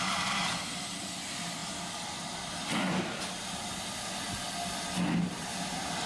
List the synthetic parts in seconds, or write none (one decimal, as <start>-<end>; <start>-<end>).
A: 0.0-0.4; 1.0-1.6; 5.3-6.1